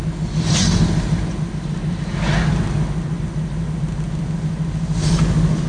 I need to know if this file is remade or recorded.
recorded